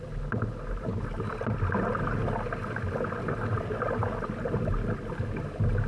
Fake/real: real